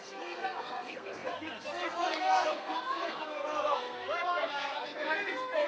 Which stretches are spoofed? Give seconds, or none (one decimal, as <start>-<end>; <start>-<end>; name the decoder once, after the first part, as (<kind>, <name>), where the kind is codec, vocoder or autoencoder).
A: 0.0-5.7 (codec, SNAC)